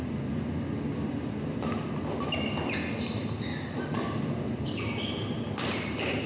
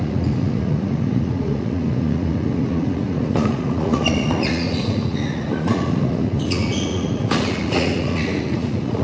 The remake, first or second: second